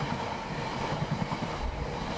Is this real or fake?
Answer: real